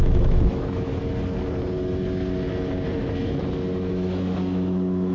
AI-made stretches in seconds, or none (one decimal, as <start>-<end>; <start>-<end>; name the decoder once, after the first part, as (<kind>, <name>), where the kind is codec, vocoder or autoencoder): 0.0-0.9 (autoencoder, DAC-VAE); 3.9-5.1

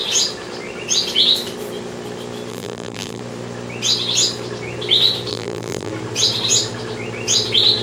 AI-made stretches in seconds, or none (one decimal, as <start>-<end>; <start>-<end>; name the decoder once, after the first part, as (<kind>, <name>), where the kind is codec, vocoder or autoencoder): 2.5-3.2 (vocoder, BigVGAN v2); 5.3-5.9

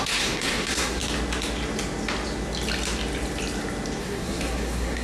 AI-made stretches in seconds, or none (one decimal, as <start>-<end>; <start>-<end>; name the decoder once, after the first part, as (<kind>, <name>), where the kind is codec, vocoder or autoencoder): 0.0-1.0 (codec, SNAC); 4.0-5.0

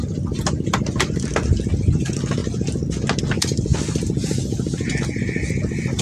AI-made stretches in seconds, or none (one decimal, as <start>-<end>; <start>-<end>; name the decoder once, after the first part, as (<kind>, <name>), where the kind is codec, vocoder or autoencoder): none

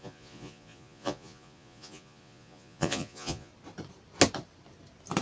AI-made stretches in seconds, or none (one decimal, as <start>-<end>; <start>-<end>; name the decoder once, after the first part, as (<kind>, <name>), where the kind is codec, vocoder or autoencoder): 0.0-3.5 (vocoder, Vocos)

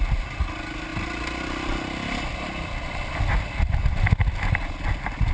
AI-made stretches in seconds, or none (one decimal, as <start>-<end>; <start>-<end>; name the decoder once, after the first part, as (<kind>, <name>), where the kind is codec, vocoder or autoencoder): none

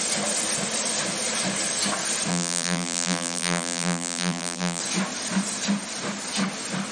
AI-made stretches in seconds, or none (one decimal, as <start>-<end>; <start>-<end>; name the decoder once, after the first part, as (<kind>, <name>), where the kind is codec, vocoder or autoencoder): 2.3-4.8 (vocoder, BigVGAN v2)